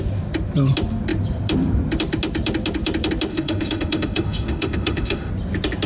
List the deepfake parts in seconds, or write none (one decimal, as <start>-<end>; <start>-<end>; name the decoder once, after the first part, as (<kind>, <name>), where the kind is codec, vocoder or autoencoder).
3.3-5.3 (autoencoder, DAC-VAE)